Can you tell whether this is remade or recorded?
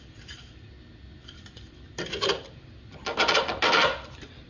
recorded